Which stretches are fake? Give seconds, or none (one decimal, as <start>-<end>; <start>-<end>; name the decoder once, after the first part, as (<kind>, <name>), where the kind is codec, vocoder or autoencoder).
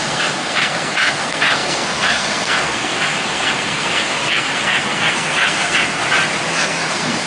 0.0-6.0 (codec, SNAC); 6.5-7.3